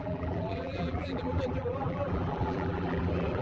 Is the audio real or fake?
fake